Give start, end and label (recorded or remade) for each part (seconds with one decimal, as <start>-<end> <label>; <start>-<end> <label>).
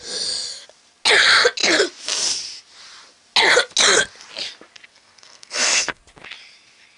0.0-4.9 recorded; 4.9-6.0 remade; 6.0-7.0 recorded